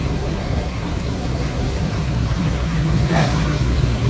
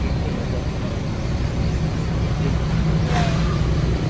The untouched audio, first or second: second